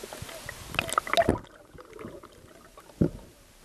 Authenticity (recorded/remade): recorded